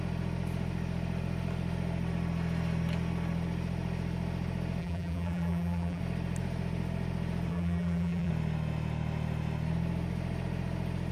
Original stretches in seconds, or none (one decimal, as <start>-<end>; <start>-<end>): 0.0-4.8; 6.0-7.5; 8.3-11.1